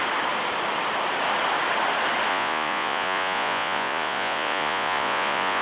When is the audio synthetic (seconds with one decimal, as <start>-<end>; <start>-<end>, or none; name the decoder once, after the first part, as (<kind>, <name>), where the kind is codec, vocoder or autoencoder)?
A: 2.3-5.6 (vocoder, Vocos)